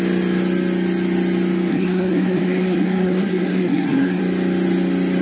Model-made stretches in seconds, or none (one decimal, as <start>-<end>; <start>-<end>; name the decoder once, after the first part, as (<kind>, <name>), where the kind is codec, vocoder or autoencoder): 1.7-4.2 (codec, SNAC)